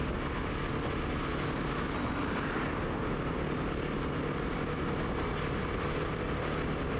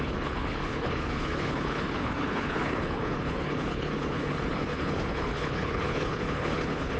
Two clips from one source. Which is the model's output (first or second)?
second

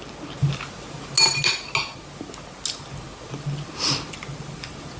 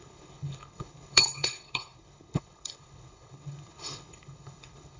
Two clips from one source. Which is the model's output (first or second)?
second